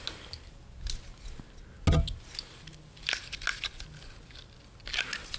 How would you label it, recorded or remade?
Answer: recorded